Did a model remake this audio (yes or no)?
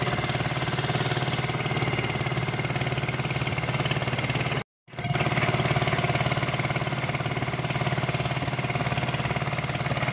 no